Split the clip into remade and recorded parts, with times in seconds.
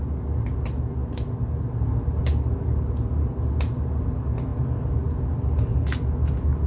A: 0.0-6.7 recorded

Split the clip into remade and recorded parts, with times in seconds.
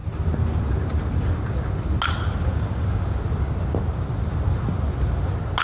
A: 0.0-5.6 recorded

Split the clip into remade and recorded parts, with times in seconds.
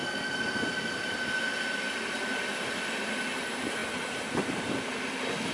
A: 0.0-5.5 recorded